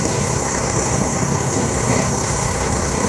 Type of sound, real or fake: fake